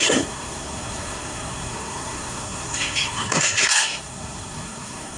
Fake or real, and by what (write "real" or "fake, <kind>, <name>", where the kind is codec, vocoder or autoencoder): fake, codec, SNAC